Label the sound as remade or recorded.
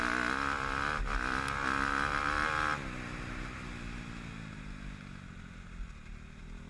recorded